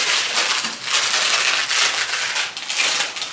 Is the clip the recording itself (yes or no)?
yes